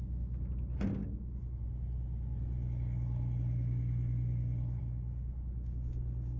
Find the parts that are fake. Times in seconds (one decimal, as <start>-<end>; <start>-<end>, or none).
none